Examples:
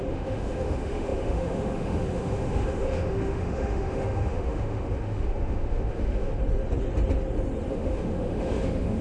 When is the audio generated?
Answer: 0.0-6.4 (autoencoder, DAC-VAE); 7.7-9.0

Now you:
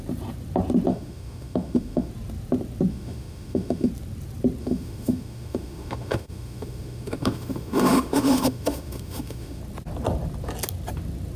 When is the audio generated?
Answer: 0.9-2.1 (autoencoder, DAC-VAE); 2.9-3.9; 4.6-9.6

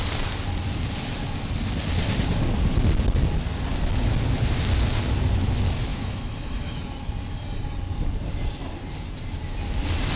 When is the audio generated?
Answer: 5.9-6.8 (autoencoder, DAC-VAE)

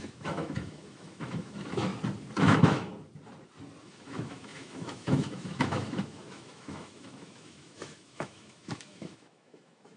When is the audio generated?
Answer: 0.0-1.9 (autoencoder, DAC-VAE); 2.4-2.9; 3.8-10.0

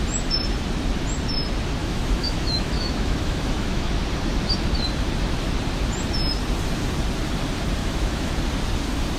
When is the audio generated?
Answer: 1.8-3.9 (autoencoder, DAC-VAE); 7.8-8.3

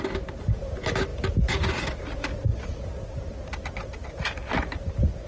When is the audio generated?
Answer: none

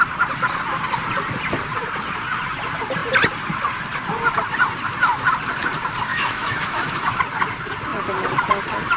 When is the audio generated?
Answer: 6.1-7.2 (autoencoder, DAC-VAE)